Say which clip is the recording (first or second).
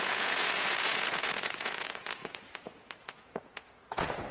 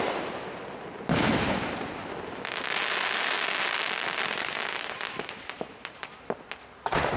second